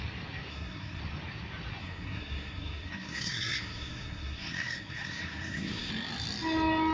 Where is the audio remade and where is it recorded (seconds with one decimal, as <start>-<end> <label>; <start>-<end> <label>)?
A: 0.0-0.5 recorded; 0.5-1.0 remade; 1.0-1.8 recorded; 1.8-5.9 remade; 5.9-6.9 recorded